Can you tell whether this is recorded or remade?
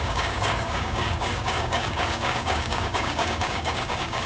remade